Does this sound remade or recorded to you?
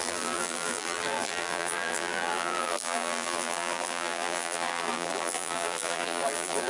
remade